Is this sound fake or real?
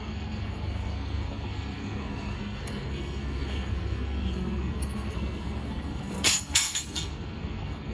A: fake